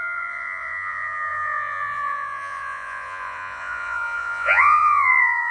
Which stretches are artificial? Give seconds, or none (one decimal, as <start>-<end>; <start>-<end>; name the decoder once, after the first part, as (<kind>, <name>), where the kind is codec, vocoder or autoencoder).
0.0-5.5 (vocoder, Vocos)